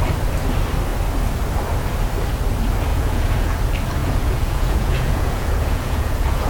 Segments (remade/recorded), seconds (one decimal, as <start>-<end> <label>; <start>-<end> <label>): 0.0-2.9 recorded; 2.9-3.6 remade; 3.6-4.0 recorded; 4.0-6.5 remade